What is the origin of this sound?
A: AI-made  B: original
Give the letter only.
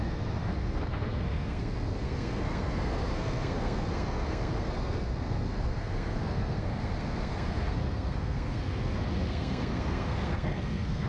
A